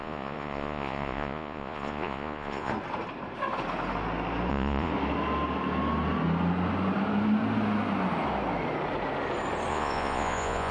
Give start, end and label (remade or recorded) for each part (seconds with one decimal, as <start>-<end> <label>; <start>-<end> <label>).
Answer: 0.0-2.7 remade; 2.7-4.5 recorded; 4.5-4.9 remade; 4.9-9.7 recorded; 9.7-10.7 remade